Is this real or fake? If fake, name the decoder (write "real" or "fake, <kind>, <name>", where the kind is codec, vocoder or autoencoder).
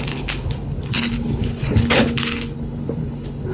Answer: fake, codec, HILCodec